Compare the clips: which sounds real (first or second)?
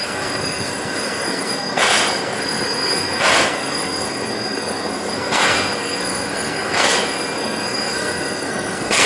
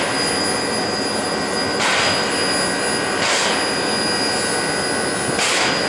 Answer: second